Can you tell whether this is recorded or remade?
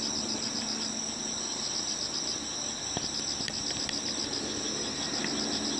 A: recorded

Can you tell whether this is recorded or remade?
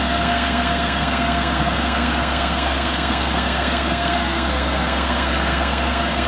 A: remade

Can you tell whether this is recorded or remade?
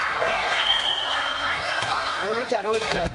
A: remade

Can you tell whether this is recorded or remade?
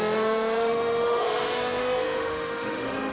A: remade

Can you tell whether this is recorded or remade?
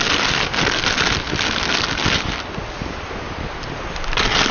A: recorded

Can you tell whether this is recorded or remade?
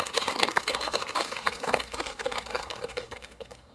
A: remade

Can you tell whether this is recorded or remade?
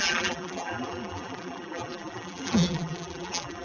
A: remade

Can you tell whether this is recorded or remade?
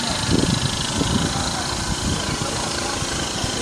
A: recorded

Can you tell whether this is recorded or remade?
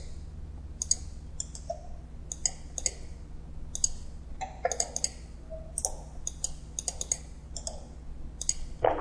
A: recorded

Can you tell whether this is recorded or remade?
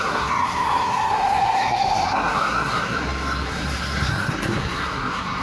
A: remade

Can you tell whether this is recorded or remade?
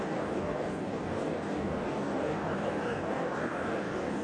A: remade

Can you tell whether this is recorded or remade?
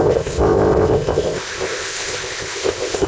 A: remade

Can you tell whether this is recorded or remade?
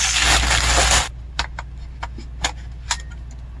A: recorded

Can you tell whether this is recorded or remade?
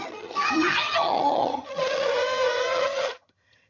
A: remade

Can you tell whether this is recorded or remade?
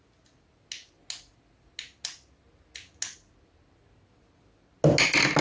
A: recorded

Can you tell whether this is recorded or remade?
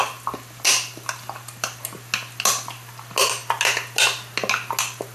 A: recorded